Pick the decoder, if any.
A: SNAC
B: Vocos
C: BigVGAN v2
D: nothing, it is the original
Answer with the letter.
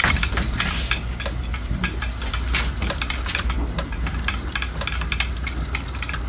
D